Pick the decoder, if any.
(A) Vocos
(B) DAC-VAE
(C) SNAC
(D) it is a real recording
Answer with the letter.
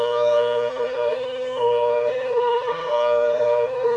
C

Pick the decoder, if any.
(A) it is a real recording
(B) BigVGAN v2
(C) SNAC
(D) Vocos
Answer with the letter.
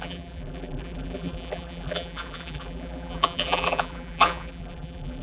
B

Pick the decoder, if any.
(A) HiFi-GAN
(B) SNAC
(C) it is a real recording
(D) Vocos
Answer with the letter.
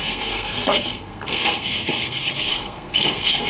B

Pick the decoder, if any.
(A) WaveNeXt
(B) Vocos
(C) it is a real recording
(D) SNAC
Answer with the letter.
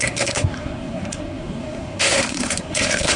D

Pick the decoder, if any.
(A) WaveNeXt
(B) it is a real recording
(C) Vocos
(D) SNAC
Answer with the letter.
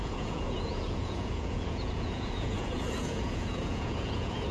C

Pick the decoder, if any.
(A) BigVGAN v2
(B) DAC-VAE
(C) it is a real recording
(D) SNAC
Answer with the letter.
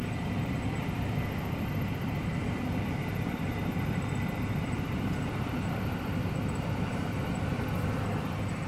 A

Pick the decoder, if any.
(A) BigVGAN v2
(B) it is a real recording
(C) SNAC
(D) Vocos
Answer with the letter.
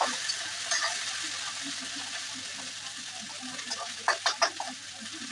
B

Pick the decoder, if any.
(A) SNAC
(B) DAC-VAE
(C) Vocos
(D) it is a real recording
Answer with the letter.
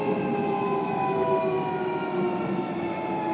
D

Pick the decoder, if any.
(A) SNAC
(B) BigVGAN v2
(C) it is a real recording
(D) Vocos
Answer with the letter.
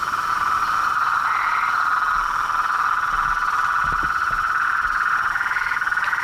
C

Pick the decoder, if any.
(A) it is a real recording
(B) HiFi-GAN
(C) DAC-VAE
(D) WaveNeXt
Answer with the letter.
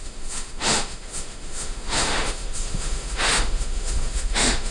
C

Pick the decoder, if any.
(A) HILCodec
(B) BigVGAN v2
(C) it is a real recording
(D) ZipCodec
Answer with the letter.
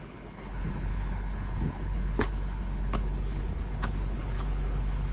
A